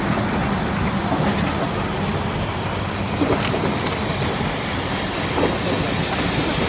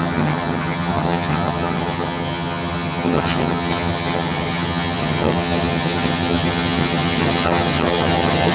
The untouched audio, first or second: first